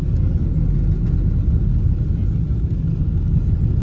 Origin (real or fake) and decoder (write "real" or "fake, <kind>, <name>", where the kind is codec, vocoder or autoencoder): real